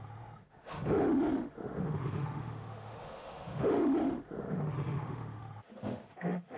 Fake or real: fake